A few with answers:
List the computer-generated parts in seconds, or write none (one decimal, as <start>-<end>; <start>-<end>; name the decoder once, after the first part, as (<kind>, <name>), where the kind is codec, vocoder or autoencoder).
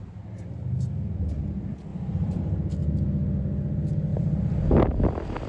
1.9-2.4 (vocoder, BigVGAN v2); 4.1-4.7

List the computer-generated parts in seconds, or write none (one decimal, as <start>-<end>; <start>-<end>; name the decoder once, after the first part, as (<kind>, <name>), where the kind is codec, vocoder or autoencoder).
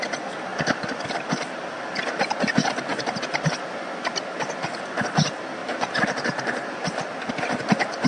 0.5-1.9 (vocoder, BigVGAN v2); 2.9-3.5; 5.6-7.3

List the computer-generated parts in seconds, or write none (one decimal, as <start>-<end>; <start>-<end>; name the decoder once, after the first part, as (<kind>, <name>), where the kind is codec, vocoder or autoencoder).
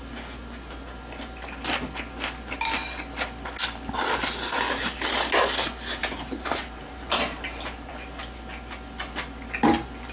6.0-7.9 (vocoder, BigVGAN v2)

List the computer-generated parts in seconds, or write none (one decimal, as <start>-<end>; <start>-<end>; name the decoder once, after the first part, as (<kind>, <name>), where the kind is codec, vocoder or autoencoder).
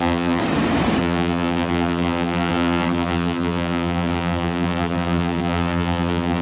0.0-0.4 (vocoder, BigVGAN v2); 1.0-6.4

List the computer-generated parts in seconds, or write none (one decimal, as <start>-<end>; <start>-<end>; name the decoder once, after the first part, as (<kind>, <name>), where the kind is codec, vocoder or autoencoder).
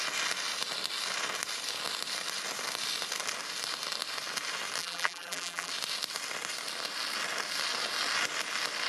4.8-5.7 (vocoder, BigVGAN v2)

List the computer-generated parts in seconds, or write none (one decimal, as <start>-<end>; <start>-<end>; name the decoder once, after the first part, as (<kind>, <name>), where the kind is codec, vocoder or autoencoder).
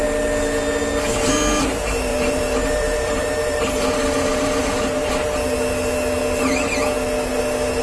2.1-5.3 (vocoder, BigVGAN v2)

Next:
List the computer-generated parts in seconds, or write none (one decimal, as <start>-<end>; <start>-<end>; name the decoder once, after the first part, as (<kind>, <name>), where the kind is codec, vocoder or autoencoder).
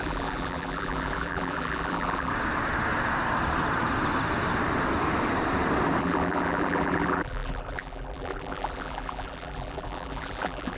0.0-2.3 (vocoder, BigVGAN v2); 6.0-10.8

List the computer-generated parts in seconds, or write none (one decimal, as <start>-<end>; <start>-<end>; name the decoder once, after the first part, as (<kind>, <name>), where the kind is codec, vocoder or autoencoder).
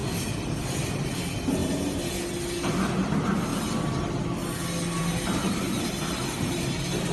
none